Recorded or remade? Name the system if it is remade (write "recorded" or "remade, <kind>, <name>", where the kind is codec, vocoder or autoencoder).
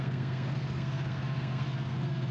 remade, codec, SNAC